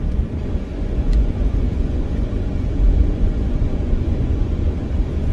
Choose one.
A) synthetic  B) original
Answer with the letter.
A